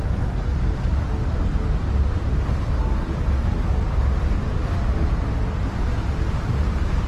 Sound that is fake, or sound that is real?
real